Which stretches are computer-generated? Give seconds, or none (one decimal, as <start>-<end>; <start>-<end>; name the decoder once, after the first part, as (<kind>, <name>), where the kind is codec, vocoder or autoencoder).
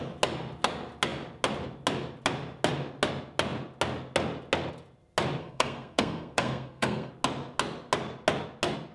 5.4-7.1 (codec, SNAC)